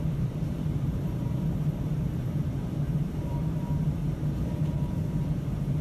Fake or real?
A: fake